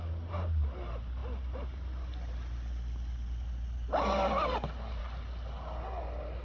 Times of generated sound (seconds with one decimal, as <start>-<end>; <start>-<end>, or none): none